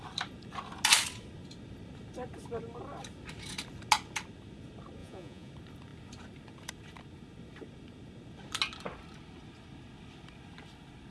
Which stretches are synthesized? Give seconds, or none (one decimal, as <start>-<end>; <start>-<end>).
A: 5.0-5.5